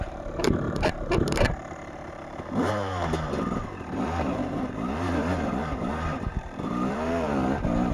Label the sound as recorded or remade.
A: remade